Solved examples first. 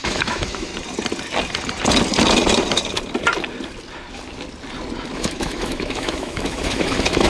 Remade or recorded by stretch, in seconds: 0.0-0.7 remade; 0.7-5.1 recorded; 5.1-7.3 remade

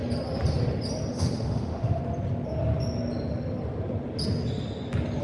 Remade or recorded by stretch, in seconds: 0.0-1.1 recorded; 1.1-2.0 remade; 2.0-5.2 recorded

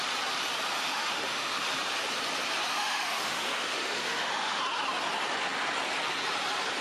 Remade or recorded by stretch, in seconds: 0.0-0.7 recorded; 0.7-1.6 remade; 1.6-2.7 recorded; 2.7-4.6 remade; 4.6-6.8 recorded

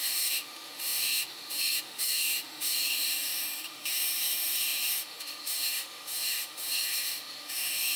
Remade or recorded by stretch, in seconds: 0.0-8.0 remade

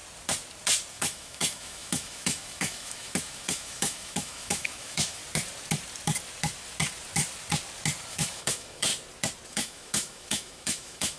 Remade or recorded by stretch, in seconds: 0.0-0.9 recorded; 0.9-5.2 remade; 5.2-8.1 recorded; 8.1-8.9 remade; 8.9-9.5 recorded; 9.5-11.2 remade

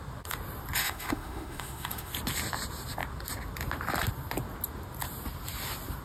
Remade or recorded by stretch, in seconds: 0.0-0.8 recorded; 0.8-2.1 remade; 2.1-6.0 recorded

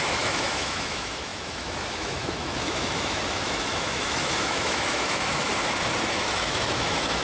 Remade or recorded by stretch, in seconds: 0.0-5.5 remade; 5.5-6.1 recorded; 6.1-7.2 remade